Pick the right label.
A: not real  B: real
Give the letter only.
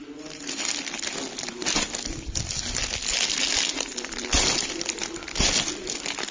B